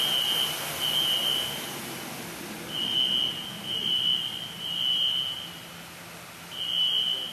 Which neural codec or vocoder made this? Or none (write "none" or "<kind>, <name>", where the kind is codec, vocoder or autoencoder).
none